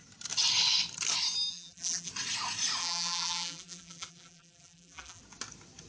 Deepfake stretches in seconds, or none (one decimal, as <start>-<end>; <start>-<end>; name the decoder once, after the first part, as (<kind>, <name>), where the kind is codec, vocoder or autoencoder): 1.5-2.1 (vocoder, BigVGAN v2); 2.8-5.2